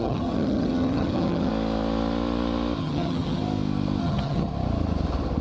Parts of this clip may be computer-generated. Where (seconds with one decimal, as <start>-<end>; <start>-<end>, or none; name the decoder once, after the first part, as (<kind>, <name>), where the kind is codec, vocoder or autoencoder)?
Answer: 0.0-1.5 (vocoder, HiFi-GAN); 2.8-3.4; 4.0-4.5